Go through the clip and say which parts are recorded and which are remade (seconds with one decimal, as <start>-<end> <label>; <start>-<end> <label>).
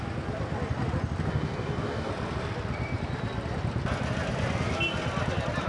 0.0-1.3 recorded; 1.3-2.1 remade; 2.1-5.7 recorded